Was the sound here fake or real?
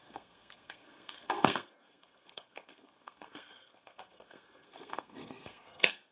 fake